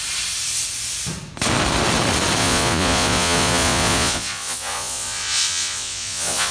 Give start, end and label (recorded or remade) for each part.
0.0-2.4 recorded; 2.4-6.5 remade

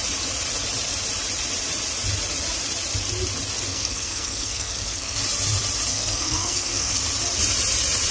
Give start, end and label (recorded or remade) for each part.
0.0-3.7 recorded; 3.7-5.2 remade; 5.2-5.9 recorded; 5.9-7.0 remade; 7.0-8.1 recorded

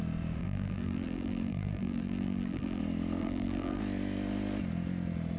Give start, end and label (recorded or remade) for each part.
0.0-0.4 recorded; 0.4-2.8 remade; 2.8-3.2 recorded; 3.2-3.8 remade; 3.8-5.4 recorded

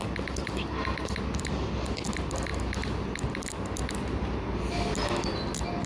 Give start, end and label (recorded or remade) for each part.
0.0-5.9 recorded

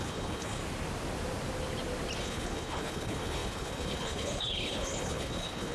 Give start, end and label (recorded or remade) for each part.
0.0-0.6 remade; 0.6-2.2 recorded; 2.2-5.7 remade

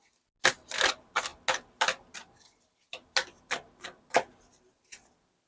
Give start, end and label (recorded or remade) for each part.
0.0-5.5 recorded